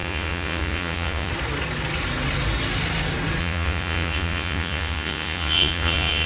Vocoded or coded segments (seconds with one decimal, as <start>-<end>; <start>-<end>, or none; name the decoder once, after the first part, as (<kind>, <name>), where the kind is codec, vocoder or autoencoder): 0.0-1.3 (vocoder, Vocos); 3.4-6.3

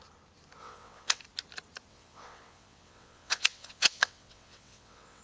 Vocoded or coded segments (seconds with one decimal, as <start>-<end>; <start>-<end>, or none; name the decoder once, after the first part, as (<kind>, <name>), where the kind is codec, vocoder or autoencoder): 0.6-1.2 (vocoder, WaveNeXt); 1.9-5.2

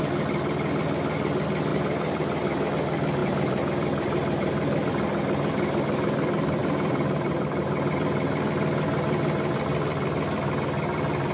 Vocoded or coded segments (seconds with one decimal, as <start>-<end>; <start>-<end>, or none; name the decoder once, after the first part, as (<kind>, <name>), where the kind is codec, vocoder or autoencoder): 1.7-2.7 (vocoder, BigVGAN v2); 3.2-4.9; 6.6-8.0

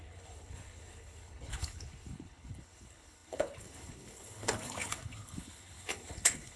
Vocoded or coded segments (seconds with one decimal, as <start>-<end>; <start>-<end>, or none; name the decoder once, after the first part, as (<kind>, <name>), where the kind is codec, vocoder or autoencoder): 0.0-6.6 (codec, HILCodec)

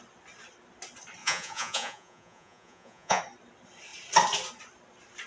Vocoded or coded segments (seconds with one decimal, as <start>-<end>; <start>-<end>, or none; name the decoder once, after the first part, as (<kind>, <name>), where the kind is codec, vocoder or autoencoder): 1.2-3.2 (vocoder, Vocos)

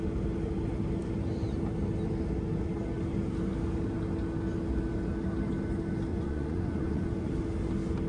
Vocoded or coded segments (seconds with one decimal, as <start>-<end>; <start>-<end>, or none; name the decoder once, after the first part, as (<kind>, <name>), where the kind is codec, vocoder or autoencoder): 6.1-7.3 (vocoder, Vocos)

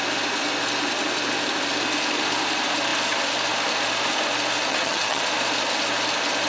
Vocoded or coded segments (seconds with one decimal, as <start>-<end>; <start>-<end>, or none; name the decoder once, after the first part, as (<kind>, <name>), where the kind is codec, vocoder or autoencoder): 4.7-5.2 (vocoder, HiFi-GAN)

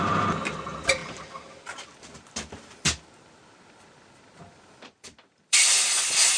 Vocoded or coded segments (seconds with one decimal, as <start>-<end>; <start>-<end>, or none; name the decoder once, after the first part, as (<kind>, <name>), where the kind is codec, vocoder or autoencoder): 0.0-6.4 (vocoder, BigVGAN v2)